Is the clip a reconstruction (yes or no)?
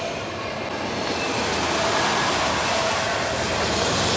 no